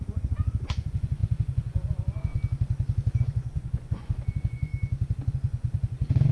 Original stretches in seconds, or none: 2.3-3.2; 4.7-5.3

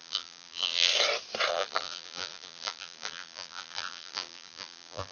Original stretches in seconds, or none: 0.9-1.5

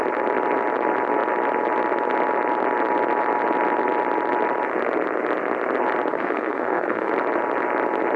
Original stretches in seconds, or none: 0.0-6.1; 7.1-8.2